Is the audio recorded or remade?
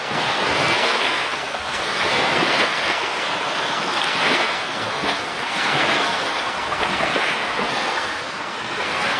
remade